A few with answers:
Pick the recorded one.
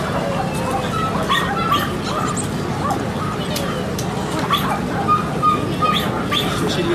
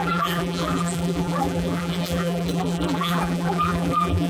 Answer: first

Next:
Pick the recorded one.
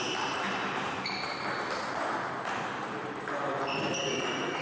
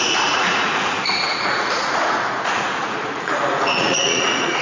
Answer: first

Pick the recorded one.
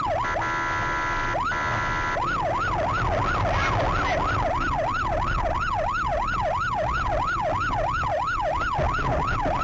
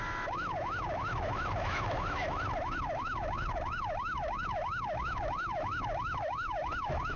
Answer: first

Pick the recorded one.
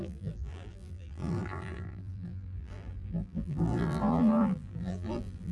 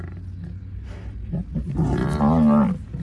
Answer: second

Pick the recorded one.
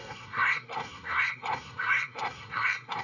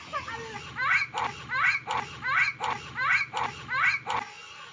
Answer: second